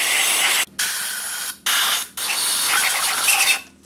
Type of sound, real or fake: real